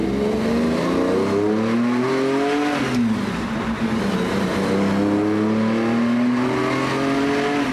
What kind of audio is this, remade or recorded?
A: recorded